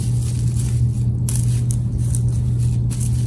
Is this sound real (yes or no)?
yes